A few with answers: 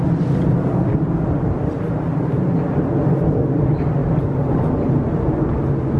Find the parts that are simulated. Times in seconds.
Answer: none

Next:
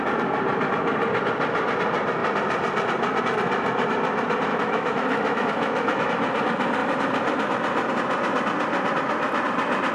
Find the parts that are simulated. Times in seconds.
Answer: 4.5-6.1 (autoencoder, DAC-VAE)

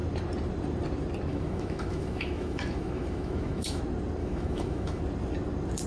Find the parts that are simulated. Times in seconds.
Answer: 1.3-3.8 (autoencoder, DAC-VAE); 4.2-5.0

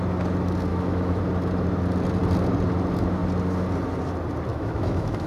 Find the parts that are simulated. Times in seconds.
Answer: 0.7-1.2 (autoencoder, DAC-VAE); 4.5-5.3

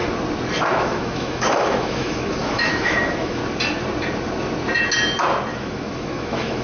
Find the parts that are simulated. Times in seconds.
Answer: 0.7-3.4 (autoencoder, DAC-VAE); 5.5-6.6